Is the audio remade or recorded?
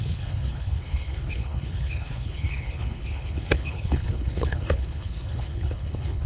remade